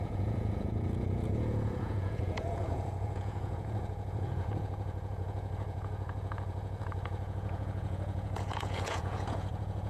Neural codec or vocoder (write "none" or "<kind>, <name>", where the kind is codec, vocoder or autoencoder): vocoder, Vocos